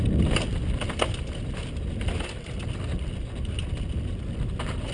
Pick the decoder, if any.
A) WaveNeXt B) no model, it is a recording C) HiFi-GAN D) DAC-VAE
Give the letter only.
B